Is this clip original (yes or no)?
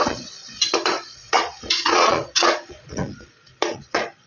no